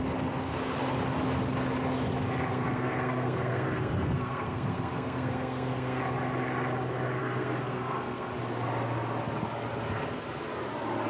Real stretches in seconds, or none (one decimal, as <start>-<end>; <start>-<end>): 0.0-2.5; 6.0-7.2; 8.3-11.1